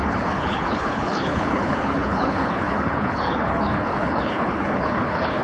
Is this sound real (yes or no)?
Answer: no